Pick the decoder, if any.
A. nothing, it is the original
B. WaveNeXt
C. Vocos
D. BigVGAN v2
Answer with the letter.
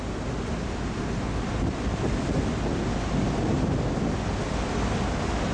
A